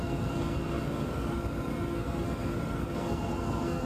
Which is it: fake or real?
fake